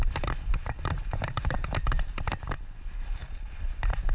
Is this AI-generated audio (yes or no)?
yes